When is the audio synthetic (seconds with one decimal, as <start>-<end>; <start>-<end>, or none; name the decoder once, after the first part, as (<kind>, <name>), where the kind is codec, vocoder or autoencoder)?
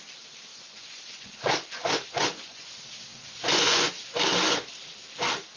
0.5-2.7 (vocoder, Vocos); 3.1-3.9